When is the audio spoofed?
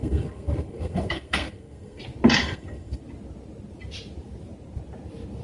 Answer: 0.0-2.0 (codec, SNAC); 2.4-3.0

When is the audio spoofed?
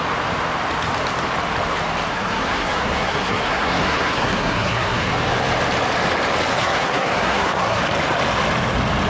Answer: 2.1-5.1 (codec, SNAC); 6.5-7.8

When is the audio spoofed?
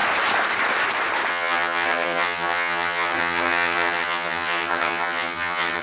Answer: 1.3-5.8 (vocoder, HiFi-GAN)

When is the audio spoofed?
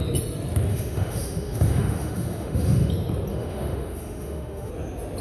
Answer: 0.7-2.9 (autoencoder, DAC-VAE); 3.3-4.7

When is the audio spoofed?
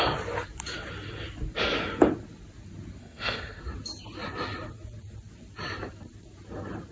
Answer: 3.0-3.6 (codec, SNAC)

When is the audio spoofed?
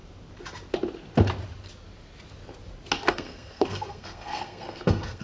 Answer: 3.1-5.2 (codec, SNAC)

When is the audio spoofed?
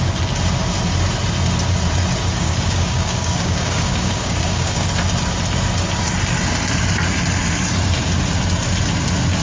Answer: 2.3-4.9 (codec, DAC)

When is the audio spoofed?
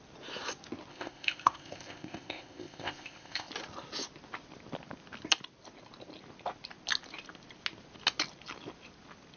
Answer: 0.9-3.5 (codec, ZipCodec)